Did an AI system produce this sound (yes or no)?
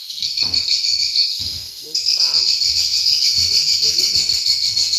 yes